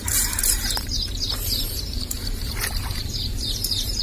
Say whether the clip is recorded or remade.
remade